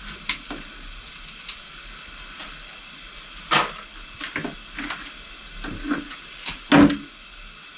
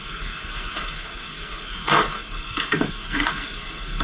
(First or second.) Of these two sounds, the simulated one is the second